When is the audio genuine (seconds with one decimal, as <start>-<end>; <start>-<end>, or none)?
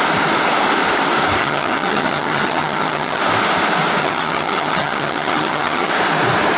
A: 0.0-1.4; 3.2-4.0; 5.9-6.6